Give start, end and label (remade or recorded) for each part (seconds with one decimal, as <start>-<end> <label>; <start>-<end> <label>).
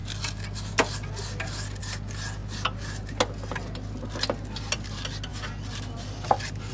0.0-6.7 recorded